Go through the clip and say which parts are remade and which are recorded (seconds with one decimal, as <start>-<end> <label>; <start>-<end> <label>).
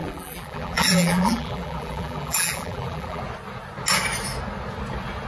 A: 0.0-3.2 remade; 3.2-5.3 recorded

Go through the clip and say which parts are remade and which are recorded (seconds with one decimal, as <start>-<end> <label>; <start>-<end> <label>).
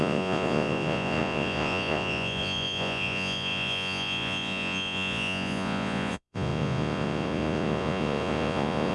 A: 0.0-8.9 remade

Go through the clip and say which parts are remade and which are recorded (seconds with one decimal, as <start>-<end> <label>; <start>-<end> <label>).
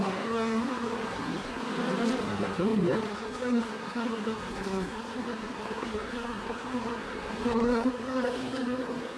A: 0.0-1.7 remade; 1.7-2.2 recorded; 2.2-9.2 remade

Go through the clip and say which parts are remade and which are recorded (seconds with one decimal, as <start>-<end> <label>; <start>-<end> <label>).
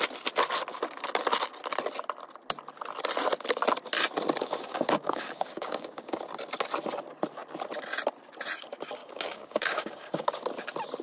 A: 0.0-4.4 recorded; 4.4-6.2 remade; 6.2-9.0 recorded; 9.0-10.3 remade; 10.3-11.0 recorded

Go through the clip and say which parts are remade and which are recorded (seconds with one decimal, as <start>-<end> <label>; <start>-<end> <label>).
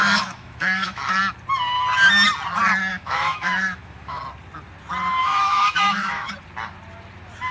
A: 0.0-1.2 remade; 1.2-2.9 recorded; 2.9-4.2 remade; 4.2-5.2 recorded; 5.2-6.3 remade; 6.3-7.5 recorded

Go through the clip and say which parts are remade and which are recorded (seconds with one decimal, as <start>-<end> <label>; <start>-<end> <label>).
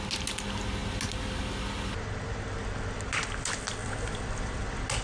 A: 0.0-3.8 recorded; 3.8-4.6 remade; 4.6-5.0 recorded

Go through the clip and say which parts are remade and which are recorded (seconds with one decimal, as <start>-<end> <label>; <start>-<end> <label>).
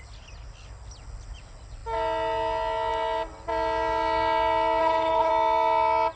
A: 0.0-4.8 recorded; 4.8-5.3 remade; 5.3-6.2 recorded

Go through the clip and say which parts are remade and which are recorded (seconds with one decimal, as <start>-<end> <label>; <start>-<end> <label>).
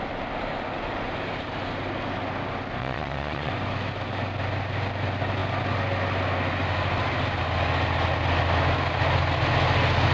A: 0.0-2.8 recorded; 2.8-3.5 remade; 3.5-10.1 recorded